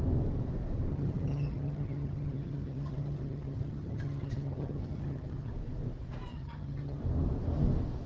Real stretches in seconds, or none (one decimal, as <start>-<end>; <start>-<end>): 0.0-0.9; 5.5-6.3; 7.0-8.1